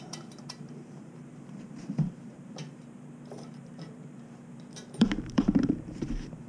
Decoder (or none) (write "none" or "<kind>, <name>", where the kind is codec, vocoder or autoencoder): vocoder, BigVGAN v2